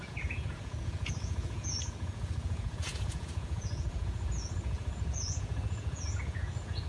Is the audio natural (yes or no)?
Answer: no